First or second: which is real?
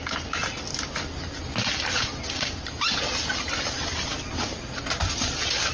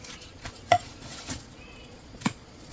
first